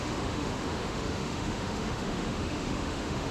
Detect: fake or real fake